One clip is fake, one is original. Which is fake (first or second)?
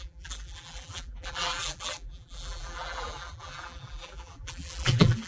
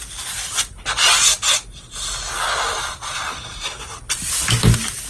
first